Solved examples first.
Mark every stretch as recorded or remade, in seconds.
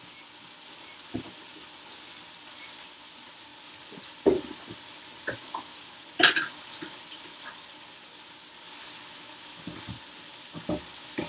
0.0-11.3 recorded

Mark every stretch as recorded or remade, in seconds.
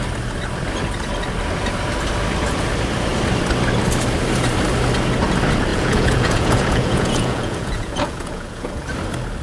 0.0-5.7 recorded; 5.7-8.8 remade; 8.8-9.4 recorded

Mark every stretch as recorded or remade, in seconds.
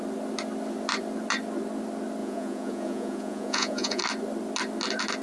0.0-2.2 recorded; 2.2-4.0 remade; 4.0-5.2 recorded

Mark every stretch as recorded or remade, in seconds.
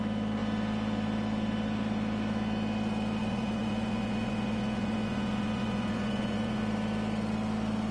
0.0-3.2 recorded; 3.2-6.6 remade; 6.6-7.9 recorded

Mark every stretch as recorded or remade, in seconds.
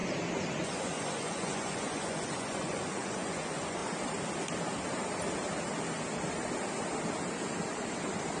0.0-0.6 recorded; 0.6-3.8 remade; 3.8-8.4 recorded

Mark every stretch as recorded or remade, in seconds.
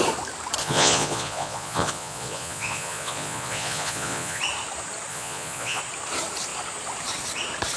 0.0-0.6 recorded; 0.6-4.4 remade; 4.4-5.1 recorded; 5.1-5.8 remade; 5.8-7.8 recorded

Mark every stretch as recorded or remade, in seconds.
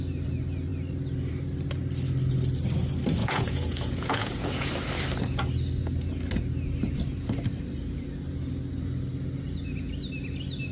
0.0-3.2 recorded; 3.2-4.7 remade; 4.7-10.7 recorded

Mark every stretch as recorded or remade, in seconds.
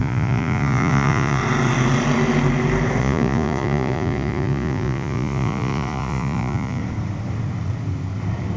0.0-1.4 remade; 1.4-3.0 recorded; 3.0-6.8 remade; 6.8-8.6 recorded